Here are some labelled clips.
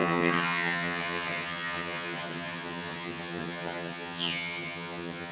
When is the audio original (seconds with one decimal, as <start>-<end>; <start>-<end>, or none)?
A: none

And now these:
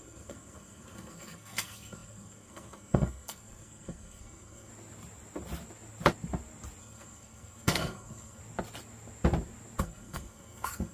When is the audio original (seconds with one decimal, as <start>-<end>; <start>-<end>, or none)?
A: 4.7-6.8; 8.4-9.8

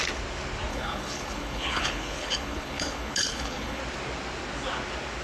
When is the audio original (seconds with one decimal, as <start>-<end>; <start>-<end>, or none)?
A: 0.0-0.7; 3.8-5.2